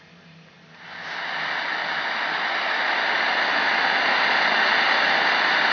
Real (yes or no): yes